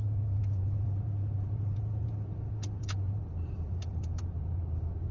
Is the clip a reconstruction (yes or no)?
yes